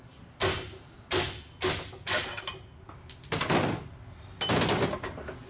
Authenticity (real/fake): real